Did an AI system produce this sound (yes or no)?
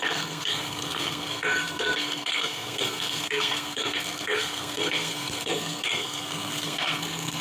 yes